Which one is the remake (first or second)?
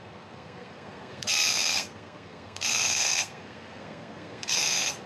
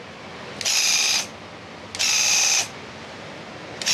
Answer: first